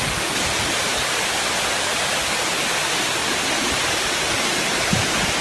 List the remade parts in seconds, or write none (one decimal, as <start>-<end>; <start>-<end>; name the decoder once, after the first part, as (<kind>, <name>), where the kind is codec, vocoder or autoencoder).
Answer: none

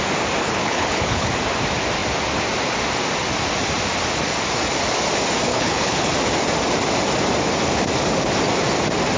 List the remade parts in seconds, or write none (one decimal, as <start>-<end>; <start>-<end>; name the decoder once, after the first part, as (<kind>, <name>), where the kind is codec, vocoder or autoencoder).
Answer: 0.4-1.3 (codec, HILCodec); 5.5-6.1

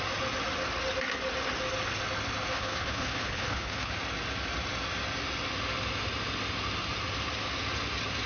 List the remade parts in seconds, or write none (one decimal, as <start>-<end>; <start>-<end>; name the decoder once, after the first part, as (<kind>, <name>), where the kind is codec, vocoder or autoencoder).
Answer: 2.5-3.9 (codec, HILCodec)

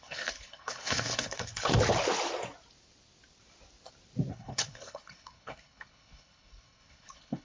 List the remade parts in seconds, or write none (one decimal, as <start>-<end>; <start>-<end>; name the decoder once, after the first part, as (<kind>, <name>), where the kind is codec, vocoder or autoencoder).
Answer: 0.0-1.7 (codec, HILCodec); 4.3-7.4